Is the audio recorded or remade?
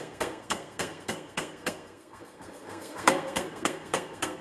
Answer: remade